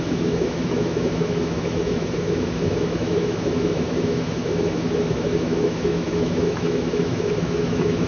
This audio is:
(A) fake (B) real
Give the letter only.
A